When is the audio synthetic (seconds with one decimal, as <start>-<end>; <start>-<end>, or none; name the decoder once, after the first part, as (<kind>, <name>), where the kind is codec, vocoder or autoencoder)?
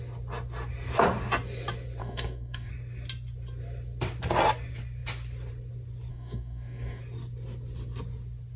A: 2.0-2.7 (codec, DAC); 6.1-7.0